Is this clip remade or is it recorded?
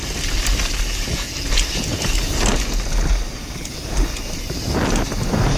recorded